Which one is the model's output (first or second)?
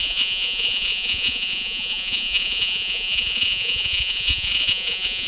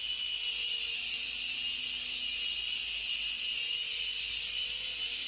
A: first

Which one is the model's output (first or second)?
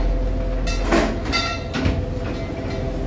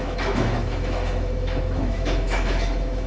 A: second